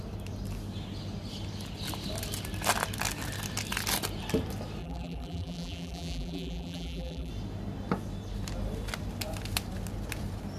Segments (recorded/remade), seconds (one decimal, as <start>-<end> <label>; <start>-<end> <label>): 0.0-4.8 recorded; 4.8-7.3 remade; 7.3-10.6 recorded